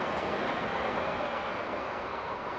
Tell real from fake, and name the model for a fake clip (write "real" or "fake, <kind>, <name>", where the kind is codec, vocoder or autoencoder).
fake, codec, SNAC